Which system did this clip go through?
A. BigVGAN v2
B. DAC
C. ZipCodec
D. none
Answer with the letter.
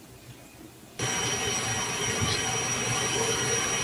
D